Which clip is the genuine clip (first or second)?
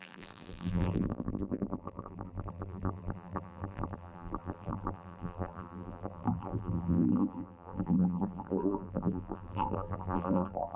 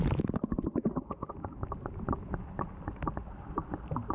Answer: second